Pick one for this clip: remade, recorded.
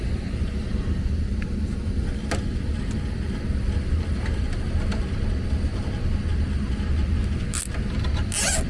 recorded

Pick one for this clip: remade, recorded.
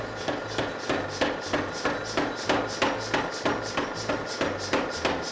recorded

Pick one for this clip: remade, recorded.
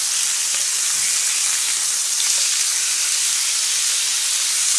recorded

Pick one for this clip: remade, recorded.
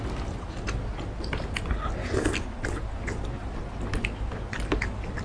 recorded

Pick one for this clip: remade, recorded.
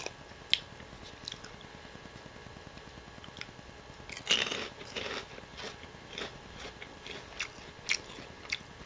recorded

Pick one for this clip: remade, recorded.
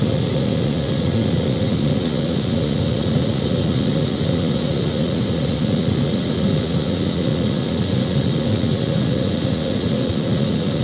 remade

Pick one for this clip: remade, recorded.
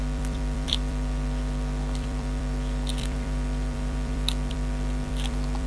remade